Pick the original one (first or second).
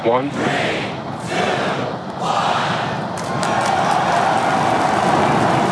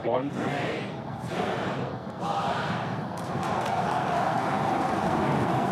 first